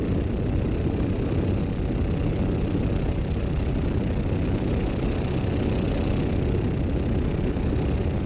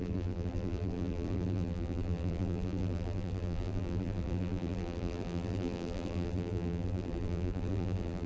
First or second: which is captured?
first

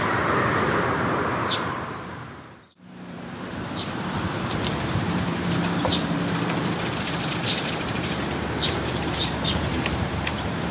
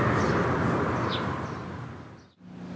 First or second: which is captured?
second